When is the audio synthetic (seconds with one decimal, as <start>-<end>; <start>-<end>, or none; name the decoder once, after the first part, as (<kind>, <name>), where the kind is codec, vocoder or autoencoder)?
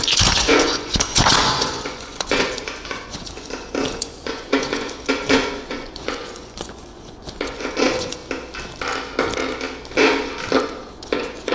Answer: 0.0-8.2 (vocoder, Vocos); 10.6-11.5